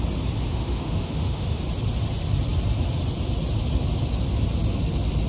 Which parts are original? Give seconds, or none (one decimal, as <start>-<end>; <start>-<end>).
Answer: 0.0-0.5; 1.6-5.3